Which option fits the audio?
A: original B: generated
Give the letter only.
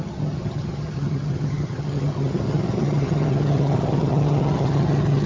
B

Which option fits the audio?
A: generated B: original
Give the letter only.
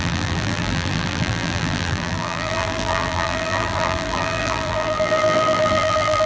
A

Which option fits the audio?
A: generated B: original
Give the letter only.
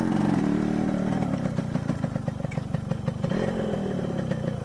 B